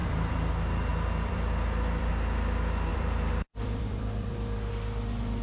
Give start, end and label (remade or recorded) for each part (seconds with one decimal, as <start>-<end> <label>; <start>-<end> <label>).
0.0-0.5 remade; 0.5-0.9 recorded; 0.9-2.1 remade; 2.1-2.9 recorded; 2.9-4.7 remade; 4.7-5.4 recorded